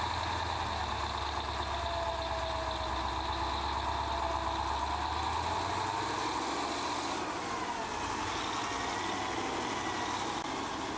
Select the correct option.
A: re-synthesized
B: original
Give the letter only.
B